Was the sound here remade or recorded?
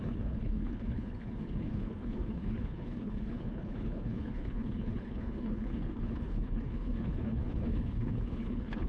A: remade